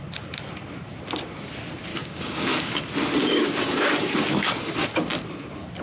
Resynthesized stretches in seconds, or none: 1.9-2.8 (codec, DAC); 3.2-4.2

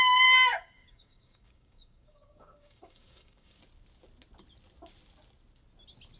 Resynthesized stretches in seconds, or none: 0.5-3.6 (codec, DAC)

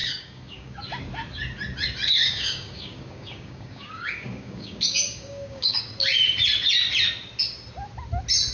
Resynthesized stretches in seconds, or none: 0.0-0.8 (codec, DAC); 2.1-5.9

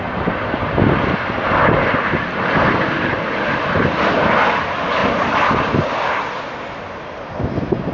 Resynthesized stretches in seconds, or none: none

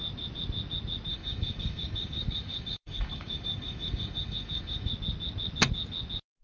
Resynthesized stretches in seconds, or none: 1.1-4.9 (codec, DAC)

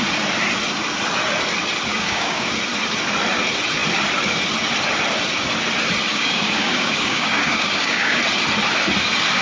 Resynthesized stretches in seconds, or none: 1.9-2.5 (codec, DAC); 6.1-8.2

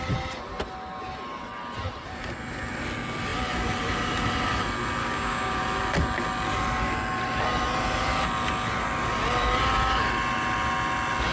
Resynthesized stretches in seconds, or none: 5.0-5.6 (codec, DAC)